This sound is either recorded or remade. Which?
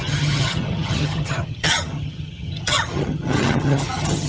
remade